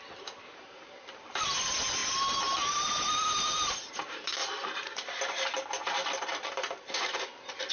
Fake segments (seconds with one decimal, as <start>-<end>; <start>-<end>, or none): 0.0-2.0; 2.7-7.7